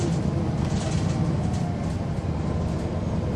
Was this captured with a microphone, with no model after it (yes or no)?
yes